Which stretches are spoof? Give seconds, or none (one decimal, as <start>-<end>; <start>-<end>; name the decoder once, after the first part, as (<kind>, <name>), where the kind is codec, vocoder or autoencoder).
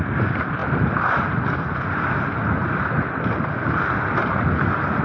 none